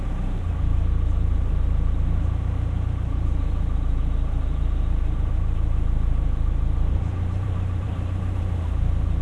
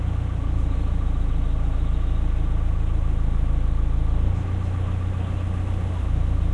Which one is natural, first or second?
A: second